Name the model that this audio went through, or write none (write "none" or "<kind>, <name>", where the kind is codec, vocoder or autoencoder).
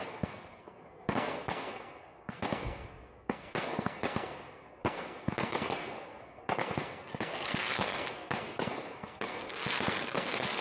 codec, SNAC